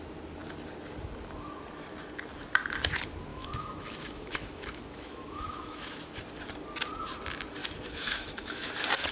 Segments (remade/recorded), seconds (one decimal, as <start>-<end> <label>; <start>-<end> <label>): 0.0-3.3 recorded; 3.3-6.1 remade; 6.1-7.6 recorded; 7.6-8.7 remade; 8.7-9.1 recorded